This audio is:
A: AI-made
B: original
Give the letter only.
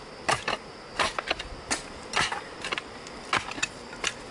B